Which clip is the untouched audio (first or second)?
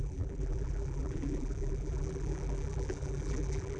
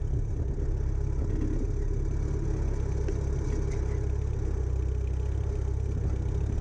second